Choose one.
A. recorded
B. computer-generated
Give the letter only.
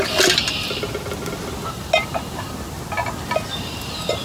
A